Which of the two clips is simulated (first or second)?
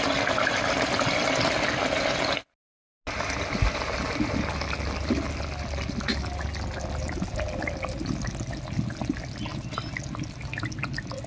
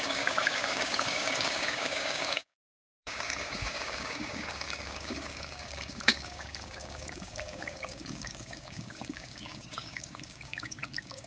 second